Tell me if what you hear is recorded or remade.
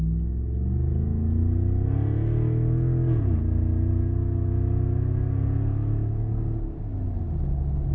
recorded